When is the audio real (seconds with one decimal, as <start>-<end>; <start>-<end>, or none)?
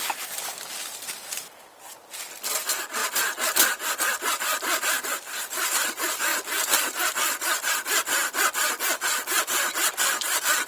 0.0-10.7